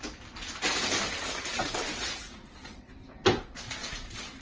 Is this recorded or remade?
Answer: recorded